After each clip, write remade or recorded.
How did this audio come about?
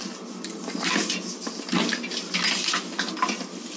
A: recorded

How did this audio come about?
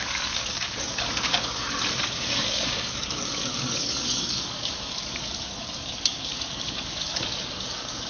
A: remade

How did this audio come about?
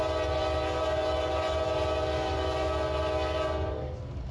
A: recorded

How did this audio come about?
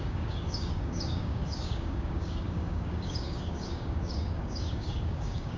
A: remade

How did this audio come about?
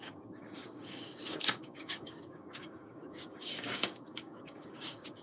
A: remade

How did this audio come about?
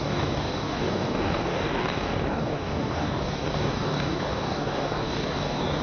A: remade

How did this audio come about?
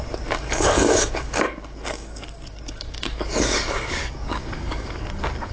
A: remade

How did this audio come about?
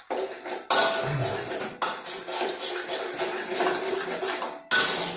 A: recorded